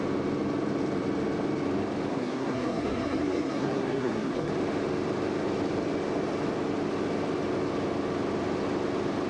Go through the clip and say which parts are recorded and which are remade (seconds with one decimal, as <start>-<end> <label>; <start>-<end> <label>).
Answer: 0.0-2.1 recorded; 2.1-4.5 remade; 4.5-9.3 recorded

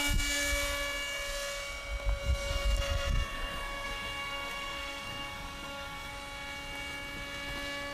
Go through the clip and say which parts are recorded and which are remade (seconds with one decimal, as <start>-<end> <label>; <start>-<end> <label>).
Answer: 0.0-2.2 recorded; 2.2-6.1 remade; 6.1-7.9 recorded

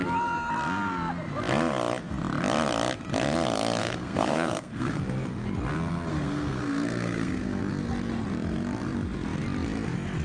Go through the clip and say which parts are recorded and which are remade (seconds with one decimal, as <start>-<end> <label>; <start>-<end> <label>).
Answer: 0.0-3.8 recorded; 3.8-5.0 remade; 5.0-6.1 recorded; 6.1-7.6 remade; 7.6-10.2 recorded

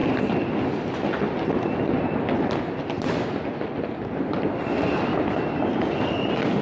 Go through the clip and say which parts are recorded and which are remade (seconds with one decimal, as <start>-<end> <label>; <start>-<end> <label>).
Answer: 0.0-6.6 recorded

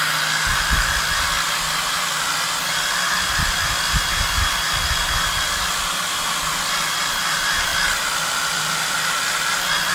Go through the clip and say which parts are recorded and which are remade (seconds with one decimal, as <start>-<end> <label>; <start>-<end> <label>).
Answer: 0.0-9.9 recorded